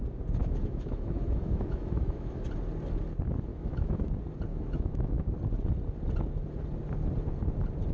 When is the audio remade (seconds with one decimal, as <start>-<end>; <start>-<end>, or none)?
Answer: 0.4-2.4; 3.5-4.1; 4.5-5.3

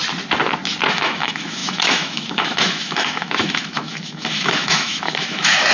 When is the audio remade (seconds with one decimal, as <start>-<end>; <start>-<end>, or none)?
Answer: 0.9-5.7

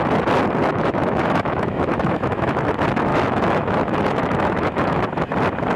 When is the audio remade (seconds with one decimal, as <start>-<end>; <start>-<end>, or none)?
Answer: 0.7-2.6; 3.1-5.0

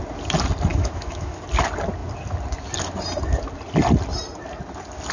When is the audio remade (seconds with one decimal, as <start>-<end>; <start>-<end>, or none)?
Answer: 0.7-1.4